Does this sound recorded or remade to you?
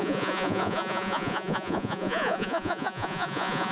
remade